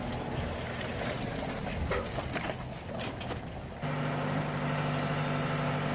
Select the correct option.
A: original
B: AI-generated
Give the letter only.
A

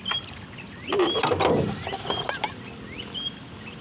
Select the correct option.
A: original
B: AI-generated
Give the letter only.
A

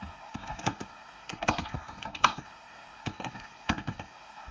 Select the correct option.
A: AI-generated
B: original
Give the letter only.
A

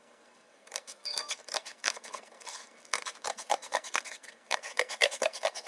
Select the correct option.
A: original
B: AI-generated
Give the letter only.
B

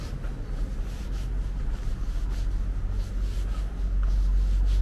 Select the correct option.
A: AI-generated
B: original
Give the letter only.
B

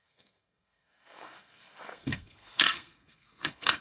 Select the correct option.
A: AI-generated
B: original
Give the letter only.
A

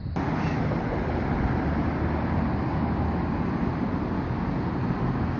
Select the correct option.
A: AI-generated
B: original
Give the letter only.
B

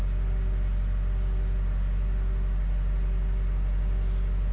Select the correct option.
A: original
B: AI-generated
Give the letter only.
A